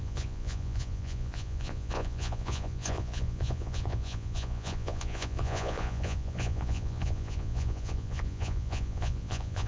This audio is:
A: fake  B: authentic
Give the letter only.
A